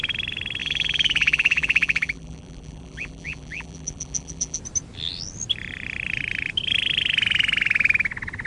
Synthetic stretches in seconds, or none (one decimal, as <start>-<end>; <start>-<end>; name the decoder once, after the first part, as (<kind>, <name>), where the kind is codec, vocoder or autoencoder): 0.6-4.6 (vocoder, BigVGAN v2)